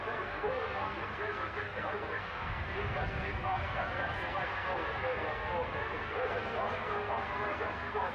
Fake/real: fake